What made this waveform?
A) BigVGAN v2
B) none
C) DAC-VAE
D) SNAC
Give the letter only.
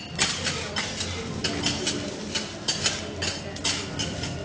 B